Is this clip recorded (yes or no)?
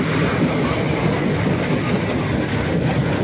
yes